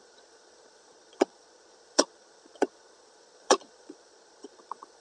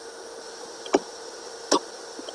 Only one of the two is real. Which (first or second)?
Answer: second